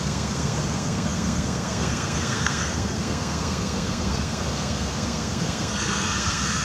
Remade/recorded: remade